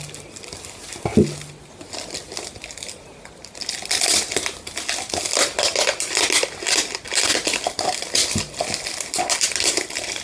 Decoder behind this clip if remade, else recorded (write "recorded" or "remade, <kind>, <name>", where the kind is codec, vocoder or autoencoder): recorded